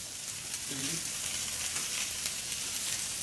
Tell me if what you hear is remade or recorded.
remade